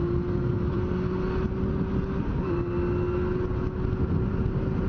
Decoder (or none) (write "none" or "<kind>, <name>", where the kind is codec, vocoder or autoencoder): none